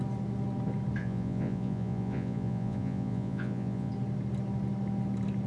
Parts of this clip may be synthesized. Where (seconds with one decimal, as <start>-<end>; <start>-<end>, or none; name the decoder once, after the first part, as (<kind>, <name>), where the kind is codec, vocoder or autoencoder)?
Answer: 1.0-3.9 (vocoder, Vocos)